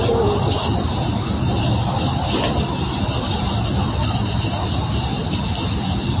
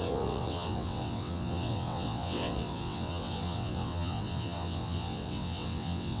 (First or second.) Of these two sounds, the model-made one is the second